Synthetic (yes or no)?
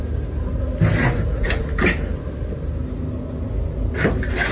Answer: no